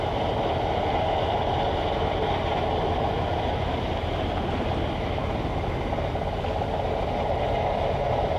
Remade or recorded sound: recorded